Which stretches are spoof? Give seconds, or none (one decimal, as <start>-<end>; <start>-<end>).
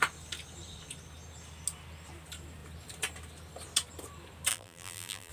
4.5-5.3